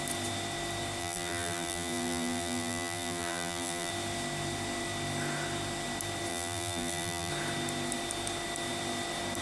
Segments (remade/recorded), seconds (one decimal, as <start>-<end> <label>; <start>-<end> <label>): 0.0-1.0 recorded; 1.0-3.9 remade; 3.9-6.3 recorded; 6.3-7.3 remade; 7.3-9.4 recorded